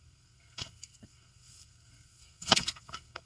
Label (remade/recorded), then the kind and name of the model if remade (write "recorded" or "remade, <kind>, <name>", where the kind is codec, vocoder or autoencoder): remade, codec, SNAC